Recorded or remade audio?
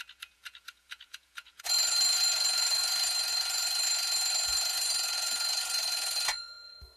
remade